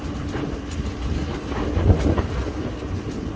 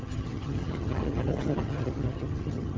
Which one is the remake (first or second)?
second